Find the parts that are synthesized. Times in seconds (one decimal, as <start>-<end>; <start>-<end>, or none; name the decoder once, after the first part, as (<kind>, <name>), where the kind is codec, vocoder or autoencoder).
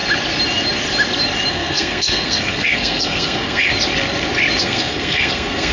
1.5-3.7 (codec, SNAC); 4.6-5.7